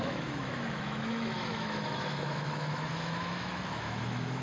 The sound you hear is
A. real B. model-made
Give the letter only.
B